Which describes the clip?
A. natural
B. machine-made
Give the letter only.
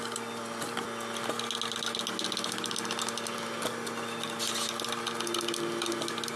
A